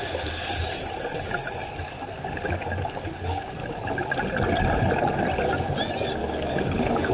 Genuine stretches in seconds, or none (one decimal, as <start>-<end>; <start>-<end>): 0.0-1.1; 3.7-6.2